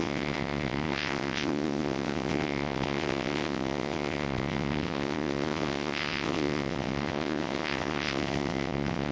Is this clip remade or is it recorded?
remade